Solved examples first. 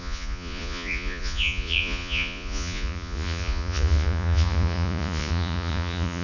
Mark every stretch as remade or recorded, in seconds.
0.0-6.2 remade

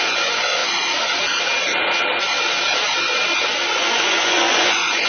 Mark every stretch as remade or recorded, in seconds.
0.0-0.6 remade; 0.6-3.7 recorded; 3.7-5.1 remade

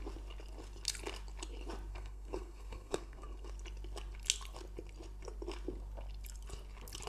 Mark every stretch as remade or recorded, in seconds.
0.0-1.9 recorded; 1.9-3.5 remade; 3.5-7.1 recorded

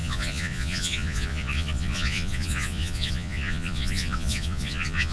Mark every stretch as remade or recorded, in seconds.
0.0-5.1 remade

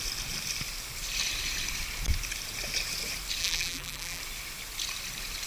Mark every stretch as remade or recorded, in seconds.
0.0-3.4 recorded; 3.4-4.2 remade; 4.2-5.5 recorded

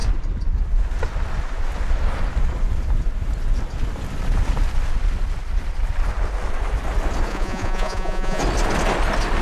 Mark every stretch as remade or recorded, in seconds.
0.0-7.3 recorded; 7.3-8.4 remade; 8.4-9.4 recorded

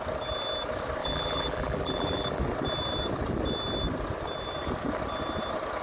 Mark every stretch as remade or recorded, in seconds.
0.0-1.0 recorded; 1.0-2.4 remade; 2.4-5.8 recorded

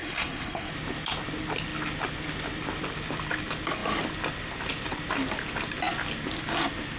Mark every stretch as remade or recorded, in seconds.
0.0-0.7 remade; 0.7-7.0 recorded